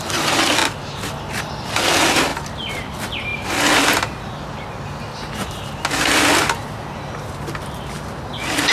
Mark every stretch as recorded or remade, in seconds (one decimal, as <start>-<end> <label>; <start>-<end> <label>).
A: 0.0-0.6 remade; 0.6-1.4 recorded; 1.4-2.3 remade; 2.3-2.9 recorded; 2.9-3.3 remade; 3.3-7.9 recorded; 7.9-8.7 remade